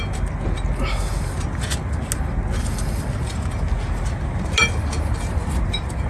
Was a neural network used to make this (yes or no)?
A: no